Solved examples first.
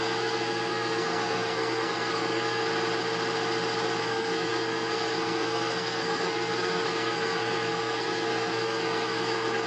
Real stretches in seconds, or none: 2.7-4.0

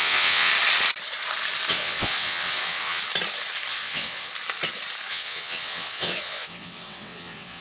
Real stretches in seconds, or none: 0.5-1.7; 3.0-3.7; 4.3-5.1